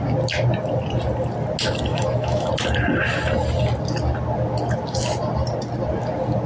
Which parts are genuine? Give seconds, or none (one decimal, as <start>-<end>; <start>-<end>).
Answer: 0.0-1.9; 2.5-6.5